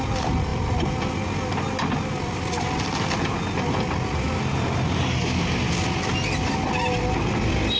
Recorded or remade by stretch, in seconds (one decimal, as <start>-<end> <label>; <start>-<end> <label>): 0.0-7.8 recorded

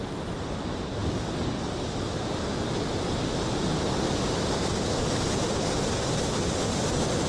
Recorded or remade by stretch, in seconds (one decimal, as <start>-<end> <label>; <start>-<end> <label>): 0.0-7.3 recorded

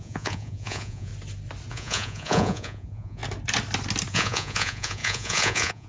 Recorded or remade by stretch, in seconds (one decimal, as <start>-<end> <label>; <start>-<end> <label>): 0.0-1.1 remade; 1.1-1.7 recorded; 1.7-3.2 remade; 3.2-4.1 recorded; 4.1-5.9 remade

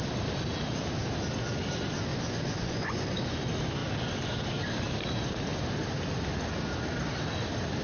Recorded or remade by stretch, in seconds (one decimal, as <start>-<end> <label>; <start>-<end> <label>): 0.0-2.1 recorded; 2.1-3.4 remade; 3.4-7.8 recorded

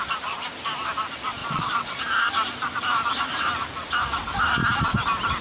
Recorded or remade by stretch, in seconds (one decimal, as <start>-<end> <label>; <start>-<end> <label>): 0.0-1.4 recorded; 1.4-2.0 remade; 2.0-5.4 recorded